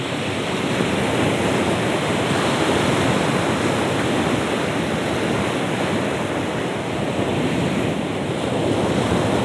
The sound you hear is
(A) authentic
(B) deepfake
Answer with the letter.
A